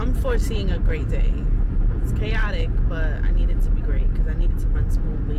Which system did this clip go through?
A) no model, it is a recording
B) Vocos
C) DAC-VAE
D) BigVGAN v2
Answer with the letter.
A